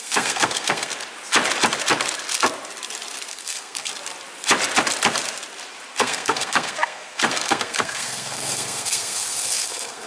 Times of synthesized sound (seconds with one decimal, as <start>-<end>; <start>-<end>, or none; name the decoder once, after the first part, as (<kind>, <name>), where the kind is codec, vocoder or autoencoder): 0.0-0.9 (codec, SNAC); 3.3-3.9; 6.0-10.1